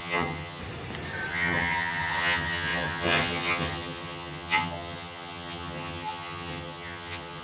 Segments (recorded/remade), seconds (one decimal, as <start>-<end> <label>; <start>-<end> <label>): 0.0-0.6 remade; 0.6-1.3 recorded; 1.3-7.4 remade